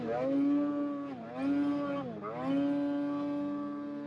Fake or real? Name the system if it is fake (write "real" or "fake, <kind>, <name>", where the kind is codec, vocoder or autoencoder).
real